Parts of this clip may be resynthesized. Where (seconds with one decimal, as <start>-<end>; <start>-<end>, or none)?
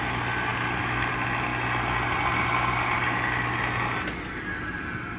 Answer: none